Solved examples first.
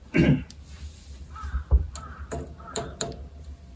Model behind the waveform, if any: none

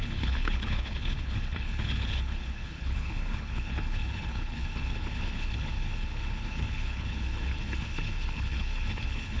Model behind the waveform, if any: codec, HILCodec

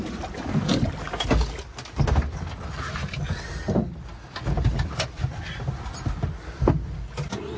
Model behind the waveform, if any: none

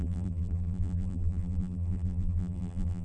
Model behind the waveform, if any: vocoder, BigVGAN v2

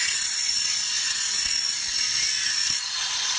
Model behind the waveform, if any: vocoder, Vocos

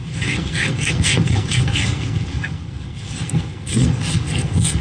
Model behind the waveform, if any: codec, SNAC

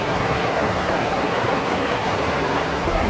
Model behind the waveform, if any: codec, SNAC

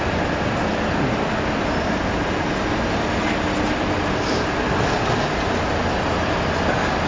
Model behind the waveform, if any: none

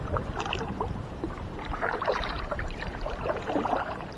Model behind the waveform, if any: vocoder, BigVGAN v2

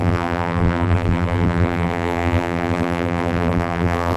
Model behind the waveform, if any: vocoder, BigVGAN v2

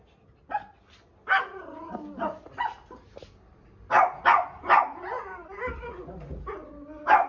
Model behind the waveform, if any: none